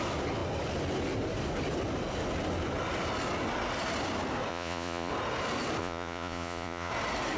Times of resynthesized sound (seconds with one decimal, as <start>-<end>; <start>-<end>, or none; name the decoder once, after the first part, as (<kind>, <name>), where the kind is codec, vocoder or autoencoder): 4.5-5.1 (vocoder, Vocos); 5.8-6.9